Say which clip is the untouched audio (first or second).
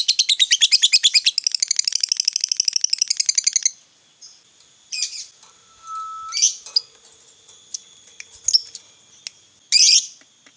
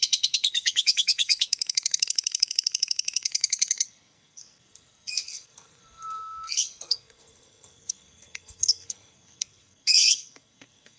first